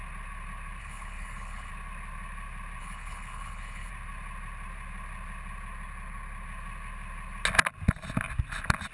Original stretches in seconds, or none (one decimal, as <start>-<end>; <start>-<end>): 0.0-0.8; 1.7-2.8; 3.9-8.9